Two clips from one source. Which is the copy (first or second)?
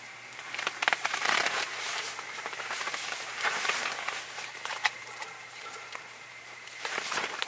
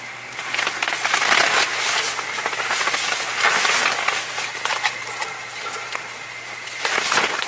first